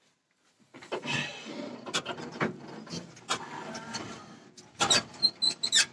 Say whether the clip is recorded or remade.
recorded